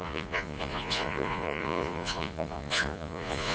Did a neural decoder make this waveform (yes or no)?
yes